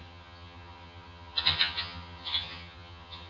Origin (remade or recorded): remade